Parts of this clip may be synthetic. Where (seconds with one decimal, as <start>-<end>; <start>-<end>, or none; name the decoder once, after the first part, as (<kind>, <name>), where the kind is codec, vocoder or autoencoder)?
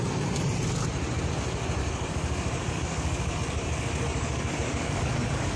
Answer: 1.8-5.6 (codec, DAC)